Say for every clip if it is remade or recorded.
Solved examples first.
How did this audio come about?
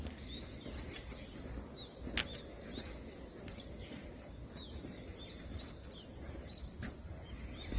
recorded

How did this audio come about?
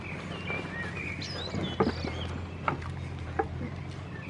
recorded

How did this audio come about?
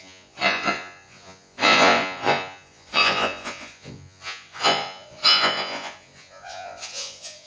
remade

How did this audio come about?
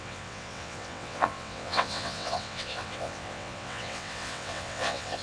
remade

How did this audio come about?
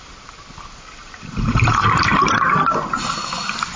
recorded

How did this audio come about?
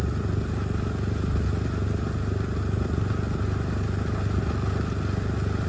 recorded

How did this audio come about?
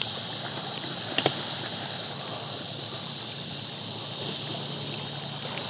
recorded